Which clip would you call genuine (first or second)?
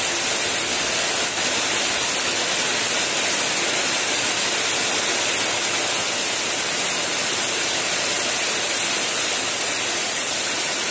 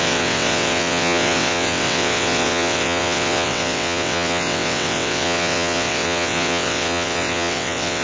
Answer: first